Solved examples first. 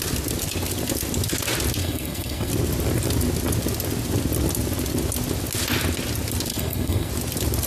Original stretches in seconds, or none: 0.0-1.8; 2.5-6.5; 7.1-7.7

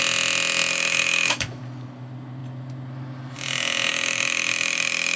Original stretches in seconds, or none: 0.0-0.7; 1.6-3.9

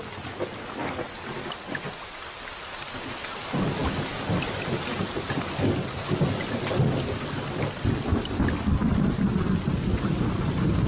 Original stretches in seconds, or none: 0.0-10.9

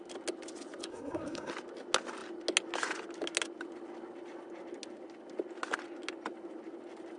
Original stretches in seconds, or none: 0.0-0.9; 1.5-7.2